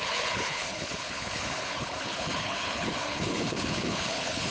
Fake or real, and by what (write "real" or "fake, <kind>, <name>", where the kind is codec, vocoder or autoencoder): fake, codec, HILCodec